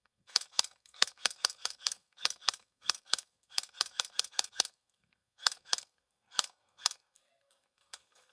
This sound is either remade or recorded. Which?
remade